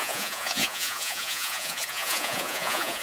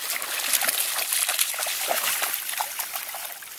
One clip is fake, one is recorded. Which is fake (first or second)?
first